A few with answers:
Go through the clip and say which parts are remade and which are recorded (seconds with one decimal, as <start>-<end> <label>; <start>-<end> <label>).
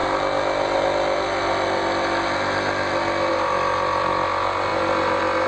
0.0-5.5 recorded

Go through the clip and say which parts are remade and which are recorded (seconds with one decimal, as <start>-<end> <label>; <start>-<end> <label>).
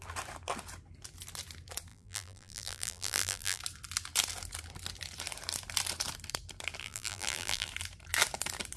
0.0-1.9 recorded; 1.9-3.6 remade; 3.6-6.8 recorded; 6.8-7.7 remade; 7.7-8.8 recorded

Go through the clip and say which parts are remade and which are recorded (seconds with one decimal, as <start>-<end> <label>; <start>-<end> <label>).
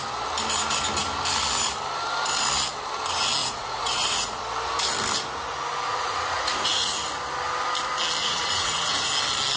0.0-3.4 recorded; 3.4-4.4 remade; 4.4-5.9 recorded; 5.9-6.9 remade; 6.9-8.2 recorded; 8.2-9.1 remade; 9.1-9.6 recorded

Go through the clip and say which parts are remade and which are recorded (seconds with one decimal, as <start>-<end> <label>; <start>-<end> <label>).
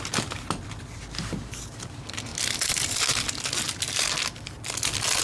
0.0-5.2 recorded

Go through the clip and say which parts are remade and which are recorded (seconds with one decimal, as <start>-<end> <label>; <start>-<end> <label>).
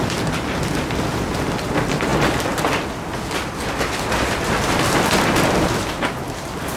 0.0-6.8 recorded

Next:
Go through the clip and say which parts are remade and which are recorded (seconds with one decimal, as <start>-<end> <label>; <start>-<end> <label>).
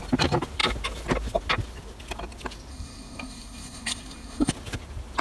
0.0-2.7 recorded; 2.7-4.5 remade; 4.5-5.2 recorded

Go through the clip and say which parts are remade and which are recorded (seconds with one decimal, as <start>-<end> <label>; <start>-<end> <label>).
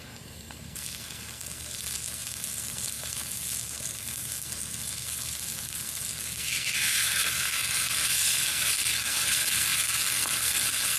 0.0-11.0 remade